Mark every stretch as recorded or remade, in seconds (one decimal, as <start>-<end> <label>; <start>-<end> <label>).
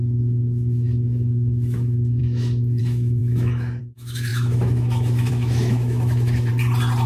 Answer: 0.0-6.5 remade; 6.5-7.1 recorded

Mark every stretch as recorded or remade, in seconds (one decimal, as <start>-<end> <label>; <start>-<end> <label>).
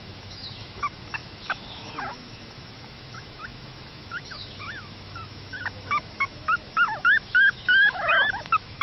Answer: 0.0-8.8 remade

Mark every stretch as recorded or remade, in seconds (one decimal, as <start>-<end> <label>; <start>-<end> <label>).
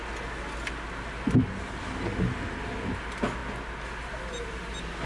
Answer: 0.0-5.1 recorded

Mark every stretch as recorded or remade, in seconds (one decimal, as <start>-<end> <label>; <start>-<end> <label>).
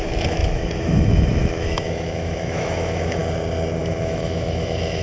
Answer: 0.0-3.2 remade; 3.2-3.8 recorded; 3.8-5.0 remade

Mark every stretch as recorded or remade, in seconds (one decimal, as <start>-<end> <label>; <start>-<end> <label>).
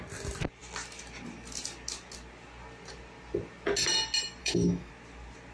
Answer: 0.0-4.4 recorded; 4.4-4.9 remade; 4.9-5.5 recorded